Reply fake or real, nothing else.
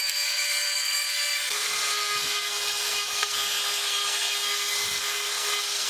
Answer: fake